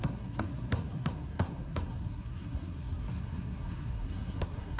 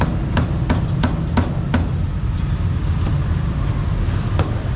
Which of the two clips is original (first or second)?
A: second